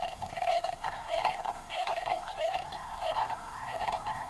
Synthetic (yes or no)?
yes